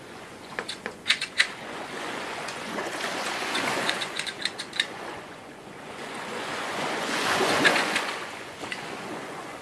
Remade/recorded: remade